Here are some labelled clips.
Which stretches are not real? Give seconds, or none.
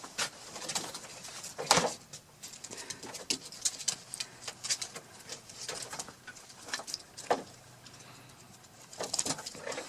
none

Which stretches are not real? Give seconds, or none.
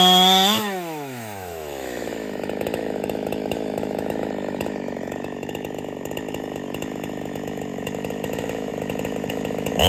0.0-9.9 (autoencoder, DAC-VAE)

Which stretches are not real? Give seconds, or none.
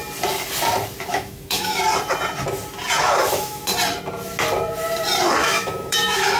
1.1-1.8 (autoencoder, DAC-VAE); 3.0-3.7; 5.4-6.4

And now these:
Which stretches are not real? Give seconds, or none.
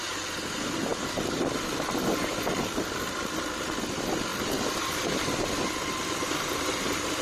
none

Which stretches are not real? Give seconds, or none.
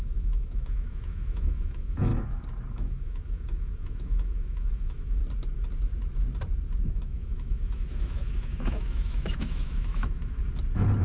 0.0-2.1 (autoencoder, DAC-VAE); 2.7-5.2; 6.9-10.4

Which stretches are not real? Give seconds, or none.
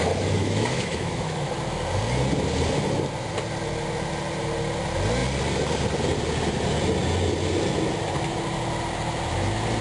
0.4-1.5 (autoencoder, DAC-VAE)